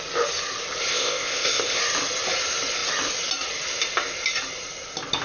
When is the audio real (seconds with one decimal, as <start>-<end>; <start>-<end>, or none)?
0.0-0.9; 1.8-5.2